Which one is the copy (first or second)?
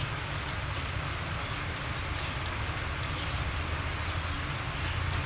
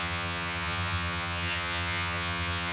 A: second